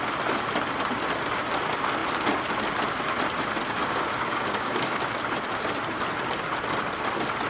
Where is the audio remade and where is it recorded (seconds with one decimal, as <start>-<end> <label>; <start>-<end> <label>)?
0.0-3.8 recorded; 3.8-5.0 remade; 5.0-7.5 recorded